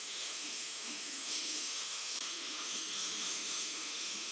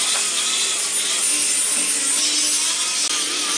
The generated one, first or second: first